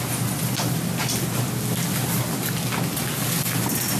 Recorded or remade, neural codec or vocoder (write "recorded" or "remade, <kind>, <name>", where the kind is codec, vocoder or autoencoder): recorded